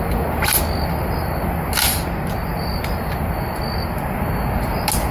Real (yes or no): yes